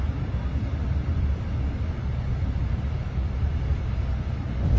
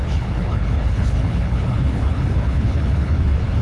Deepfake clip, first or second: second